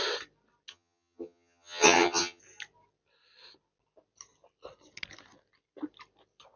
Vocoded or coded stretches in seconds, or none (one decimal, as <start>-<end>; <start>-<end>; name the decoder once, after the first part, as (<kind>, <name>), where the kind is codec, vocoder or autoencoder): 0.7-2.4 (vocoder, HiFi-GAN)